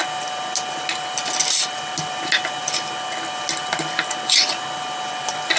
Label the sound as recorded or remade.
recorded